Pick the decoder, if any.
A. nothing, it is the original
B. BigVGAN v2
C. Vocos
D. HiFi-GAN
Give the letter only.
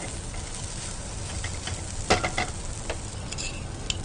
A